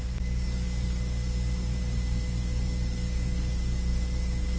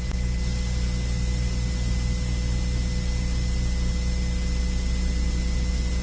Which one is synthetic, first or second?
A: first